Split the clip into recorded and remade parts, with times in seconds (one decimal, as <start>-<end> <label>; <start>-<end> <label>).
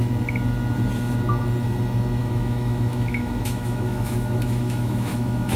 0.0-2.2 recorded; 2.2-5.6 remade